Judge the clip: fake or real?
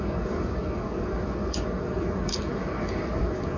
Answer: fake